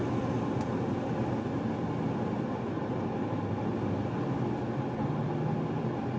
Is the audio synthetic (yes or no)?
no